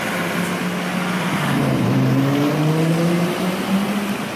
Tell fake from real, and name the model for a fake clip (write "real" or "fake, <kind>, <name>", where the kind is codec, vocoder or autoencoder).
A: real